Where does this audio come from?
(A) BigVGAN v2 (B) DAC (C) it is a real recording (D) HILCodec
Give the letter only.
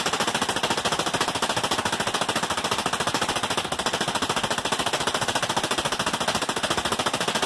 C